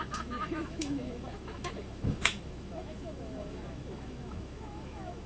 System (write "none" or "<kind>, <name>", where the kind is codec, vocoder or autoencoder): autoencoder, DAC-VAE